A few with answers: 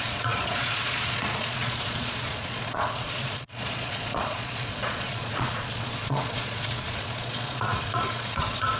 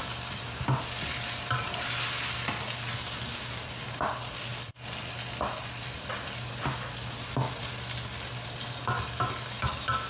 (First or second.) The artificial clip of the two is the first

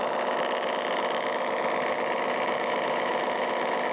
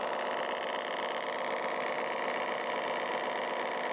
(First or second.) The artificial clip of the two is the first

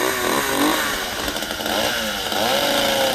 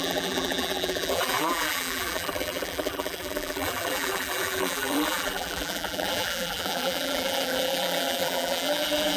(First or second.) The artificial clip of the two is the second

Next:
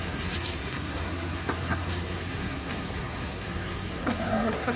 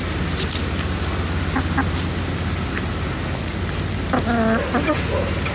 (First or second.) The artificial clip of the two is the first